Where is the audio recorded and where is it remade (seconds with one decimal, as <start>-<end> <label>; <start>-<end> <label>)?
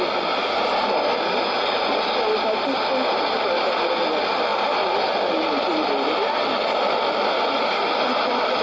0.0-8.6 recorded